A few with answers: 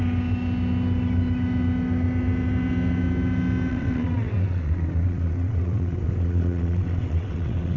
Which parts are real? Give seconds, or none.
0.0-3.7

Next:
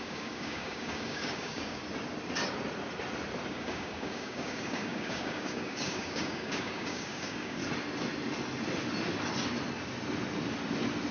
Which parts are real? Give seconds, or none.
1.8-3.5; 7.6-11.1

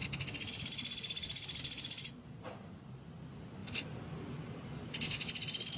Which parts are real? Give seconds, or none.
0.0-5.8

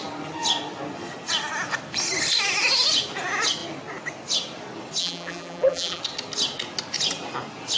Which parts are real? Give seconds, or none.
0.0-5.0; 6.0-7.8

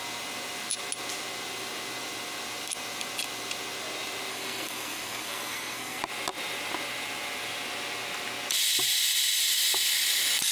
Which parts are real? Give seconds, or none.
0.0-4.3; 6.0-10.5

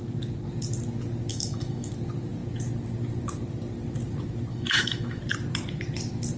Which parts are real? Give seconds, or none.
0.0-1.3; 1.9-4.5; 5.2-6.4